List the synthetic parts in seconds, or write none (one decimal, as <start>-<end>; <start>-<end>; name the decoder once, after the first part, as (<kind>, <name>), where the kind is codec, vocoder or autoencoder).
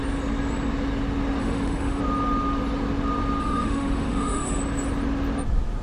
1.4-2.0 (autoencoder, DAC-VAE); 3.4-4.6